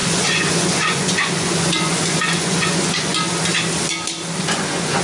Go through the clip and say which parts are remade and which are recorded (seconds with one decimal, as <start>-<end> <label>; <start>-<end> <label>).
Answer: 0.0-3.2 remade; 3.2-4.4 recorded; 4.4-5.0 remade